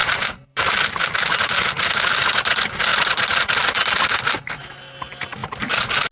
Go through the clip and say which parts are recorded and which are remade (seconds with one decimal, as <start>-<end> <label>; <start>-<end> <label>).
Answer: 0.0-0.7 remade; 0.7-6.1 recorded